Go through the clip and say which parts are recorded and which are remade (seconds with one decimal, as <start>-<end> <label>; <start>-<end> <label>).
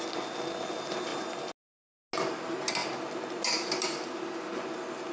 0.0-5.1 recorded